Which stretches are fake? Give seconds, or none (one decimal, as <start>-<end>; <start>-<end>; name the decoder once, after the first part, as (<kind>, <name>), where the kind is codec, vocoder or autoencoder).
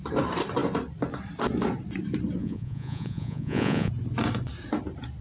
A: 2.4-3.9 (vocoder, Vocos)